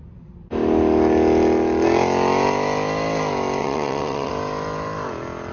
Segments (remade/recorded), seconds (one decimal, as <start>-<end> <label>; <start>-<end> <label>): 0.0-3.6 recorded; 3.6-4.3 remade; 4.3-5.5 recorded